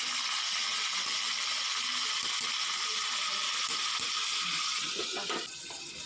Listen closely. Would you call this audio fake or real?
real